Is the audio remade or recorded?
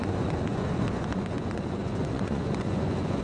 remade